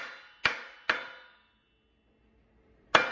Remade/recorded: recorded